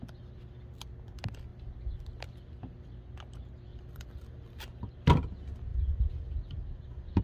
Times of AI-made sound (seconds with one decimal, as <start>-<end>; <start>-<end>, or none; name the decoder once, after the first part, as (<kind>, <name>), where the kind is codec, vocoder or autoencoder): 3.7-4.6 (vocoder, BigVGAN v2); 5.7-7.2